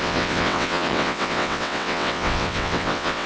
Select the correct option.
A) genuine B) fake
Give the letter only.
B